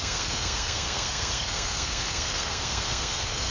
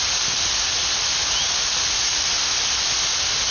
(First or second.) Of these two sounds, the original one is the second